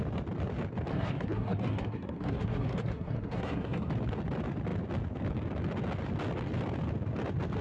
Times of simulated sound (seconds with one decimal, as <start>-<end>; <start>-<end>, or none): 0.9-3.9